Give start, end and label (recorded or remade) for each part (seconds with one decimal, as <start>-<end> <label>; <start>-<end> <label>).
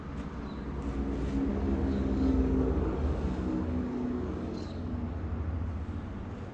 0.0-1.5 recorded; 1.5-4.9 remade; 4.9-6.5 recorded